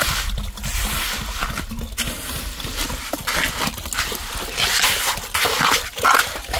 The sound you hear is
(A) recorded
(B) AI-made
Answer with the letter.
A